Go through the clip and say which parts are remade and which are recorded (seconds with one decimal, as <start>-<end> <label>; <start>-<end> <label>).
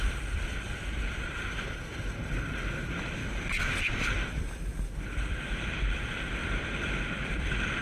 0.0-1.9 remade; 1.9-2.5 recorded; 2.5-3.2 remade; 3.2-4.1 recorded; 4.1-4.7 remade; 4.7-5.4 recorded; 5.4-6.4 remade; 6.4-7.2 recorded; 7.2-7.8 remade